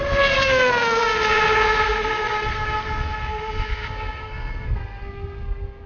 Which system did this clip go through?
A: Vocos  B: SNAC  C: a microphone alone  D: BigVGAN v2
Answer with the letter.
B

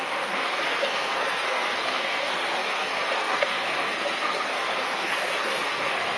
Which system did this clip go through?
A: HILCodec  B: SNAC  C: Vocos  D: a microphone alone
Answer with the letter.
B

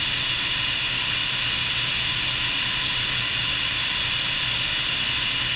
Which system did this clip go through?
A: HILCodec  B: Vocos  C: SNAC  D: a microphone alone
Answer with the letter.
D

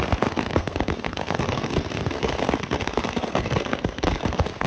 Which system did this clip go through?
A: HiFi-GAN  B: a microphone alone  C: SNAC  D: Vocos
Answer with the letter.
C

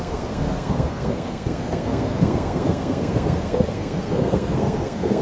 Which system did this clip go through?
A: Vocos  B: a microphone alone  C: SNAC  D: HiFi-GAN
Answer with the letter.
C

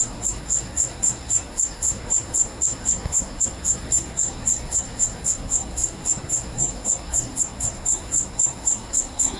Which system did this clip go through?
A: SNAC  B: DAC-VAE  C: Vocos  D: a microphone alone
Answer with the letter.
A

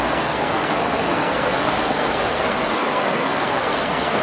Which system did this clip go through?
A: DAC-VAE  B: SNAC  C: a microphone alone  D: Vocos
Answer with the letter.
B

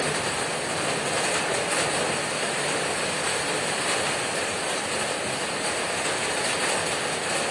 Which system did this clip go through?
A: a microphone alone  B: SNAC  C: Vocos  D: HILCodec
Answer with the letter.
A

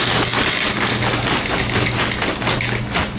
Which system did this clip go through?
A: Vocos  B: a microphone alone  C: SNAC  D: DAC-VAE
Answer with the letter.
B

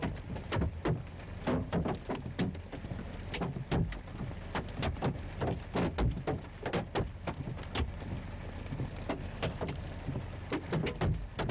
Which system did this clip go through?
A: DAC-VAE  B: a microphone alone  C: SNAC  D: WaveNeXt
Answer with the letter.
B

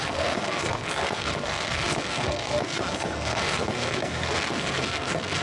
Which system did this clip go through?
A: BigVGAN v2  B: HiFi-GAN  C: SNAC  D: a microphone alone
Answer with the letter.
C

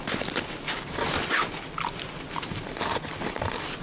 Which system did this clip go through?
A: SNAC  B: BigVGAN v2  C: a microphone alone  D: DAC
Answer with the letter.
C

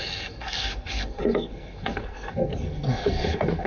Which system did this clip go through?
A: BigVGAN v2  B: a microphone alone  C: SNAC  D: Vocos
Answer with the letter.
C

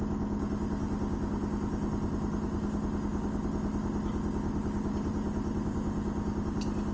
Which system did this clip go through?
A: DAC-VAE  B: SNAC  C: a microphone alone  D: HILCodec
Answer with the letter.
C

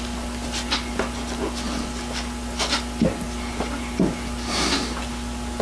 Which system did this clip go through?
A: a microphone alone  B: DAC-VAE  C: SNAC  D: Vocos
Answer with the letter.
A